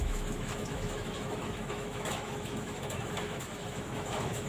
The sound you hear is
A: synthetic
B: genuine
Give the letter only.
A